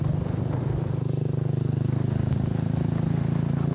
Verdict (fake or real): real